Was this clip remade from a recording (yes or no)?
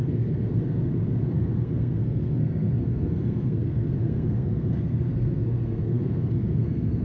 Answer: yes